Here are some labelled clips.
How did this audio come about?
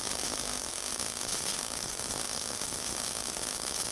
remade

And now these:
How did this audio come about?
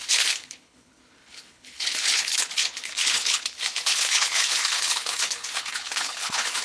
remade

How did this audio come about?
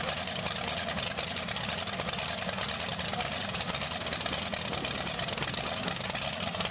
recorded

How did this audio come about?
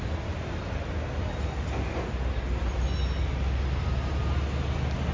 recorded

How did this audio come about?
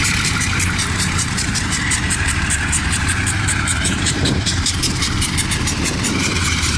remade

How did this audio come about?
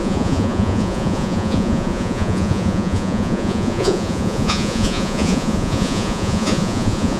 remade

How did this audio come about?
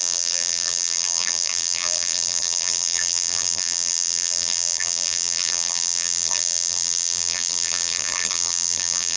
remade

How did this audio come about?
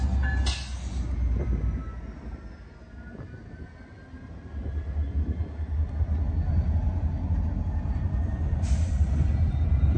recorded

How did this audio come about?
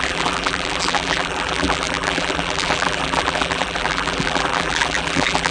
remade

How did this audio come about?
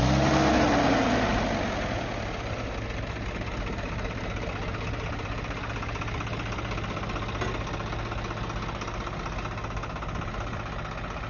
recorded